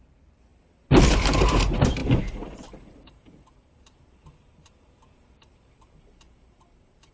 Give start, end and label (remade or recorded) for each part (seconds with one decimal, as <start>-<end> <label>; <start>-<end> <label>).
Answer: 0.0-0.5 remade; 0.5-1.1 recorded; 1.1-7.1 remade